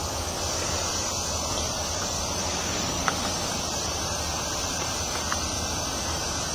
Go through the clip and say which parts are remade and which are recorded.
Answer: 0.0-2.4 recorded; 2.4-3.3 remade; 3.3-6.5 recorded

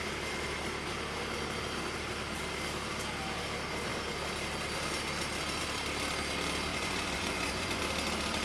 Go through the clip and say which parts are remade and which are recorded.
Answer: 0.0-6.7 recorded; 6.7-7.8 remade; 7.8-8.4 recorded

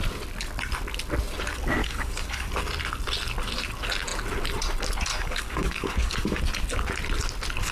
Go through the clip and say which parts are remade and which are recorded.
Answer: 0.0-1.8 recorded; 1.8-2.5 remade; 2.5-5.1 recorded; 5.1-6.4 remade; 6.4-7.7 recorded